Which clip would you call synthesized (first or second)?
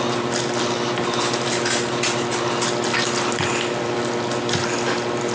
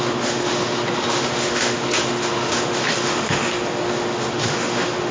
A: second